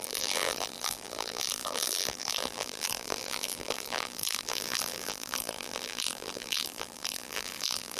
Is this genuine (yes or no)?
no